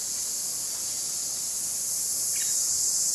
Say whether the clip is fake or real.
real